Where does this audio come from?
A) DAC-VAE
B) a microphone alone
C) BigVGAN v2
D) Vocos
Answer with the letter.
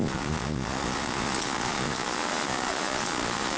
D